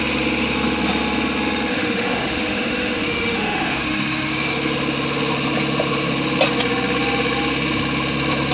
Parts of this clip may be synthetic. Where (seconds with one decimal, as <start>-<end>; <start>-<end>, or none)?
1.7-4.3